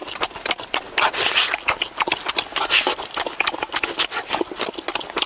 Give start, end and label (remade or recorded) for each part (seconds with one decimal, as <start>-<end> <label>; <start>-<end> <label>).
0.0-5.3 recorded